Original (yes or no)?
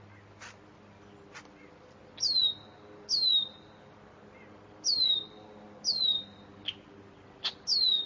yes